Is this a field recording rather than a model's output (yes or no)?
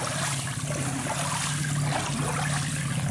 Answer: yes